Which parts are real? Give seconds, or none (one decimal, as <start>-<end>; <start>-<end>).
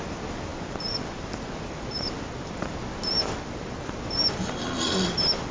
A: 0.0-5.5